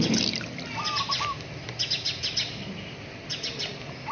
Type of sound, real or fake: real